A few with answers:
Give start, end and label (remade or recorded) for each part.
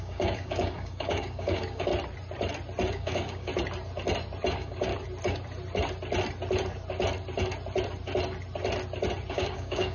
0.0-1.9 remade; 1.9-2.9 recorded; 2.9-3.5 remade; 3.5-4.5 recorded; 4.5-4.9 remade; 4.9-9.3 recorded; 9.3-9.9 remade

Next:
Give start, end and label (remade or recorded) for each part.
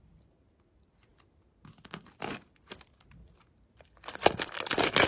0.0-5.1 recorded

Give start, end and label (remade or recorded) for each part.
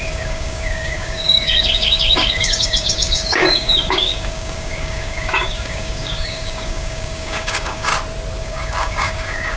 0.0-7.9 remade; 7.9-8.4 recorded; 8.4-9.6 remade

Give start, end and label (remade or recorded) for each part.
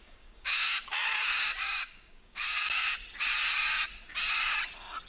0.0-0.6 remade; 0.6-1.6 recorded; 1.6-2.8 remade; 2.8-5.1 recorded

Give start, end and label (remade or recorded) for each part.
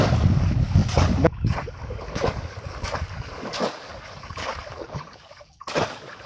0.0-6.3 remade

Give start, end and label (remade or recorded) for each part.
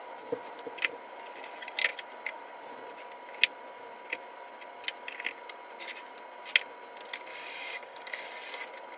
0.0-7.3 recorded; 7.3-8.3 remade; 8.3-9.0 recorded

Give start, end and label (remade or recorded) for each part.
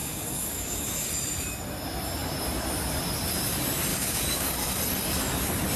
0.0-1.1 remade; 1.1-3.9 recorded; 3.9-4.8 remade; 4.8-5.8 recorded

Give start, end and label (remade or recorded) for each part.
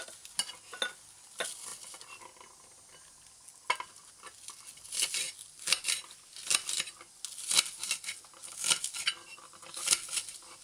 0.0-10.6 recorded